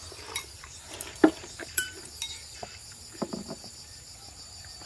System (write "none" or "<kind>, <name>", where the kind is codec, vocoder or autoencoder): vocoder, BigVGAN v2